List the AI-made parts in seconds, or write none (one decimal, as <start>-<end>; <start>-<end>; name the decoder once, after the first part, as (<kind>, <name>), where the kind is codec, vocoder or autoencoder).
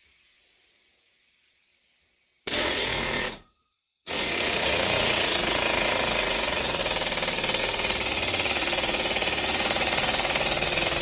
0.0-1.7 (vocoder, Vocos); 2.6-6.8; 7.6-11.0